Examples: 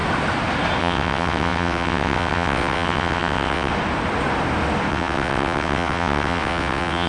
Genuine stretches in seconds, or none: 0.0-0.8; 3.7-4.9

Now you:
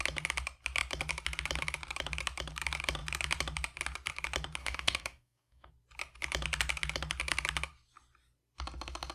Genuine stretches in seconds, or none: 0.0-4.6; 5.7-9.1

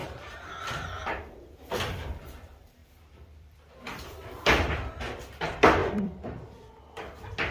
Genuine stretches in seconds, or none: 0.5-2.8; 4.7-5.8; 7.0-7.5

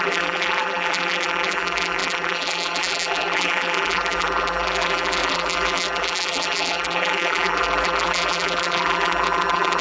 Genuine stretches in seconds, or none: none

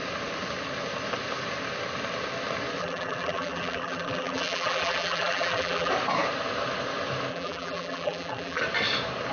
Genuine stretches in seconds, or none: 0.0-2.8; 5.9-7.3; 8.6-9.3

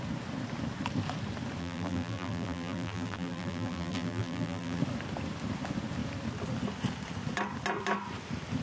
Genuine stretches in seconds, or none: 0.0-1.6; 4.8-8.6

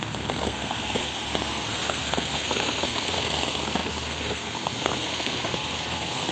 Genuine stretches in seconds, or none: none

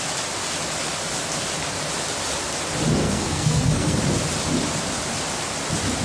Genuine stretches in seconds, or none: 0.0-3.0; 4.0-6.0